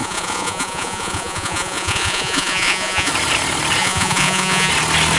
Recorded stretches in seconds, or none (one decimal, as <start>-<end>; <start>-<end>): 3.1-3.8; 4.7-5.2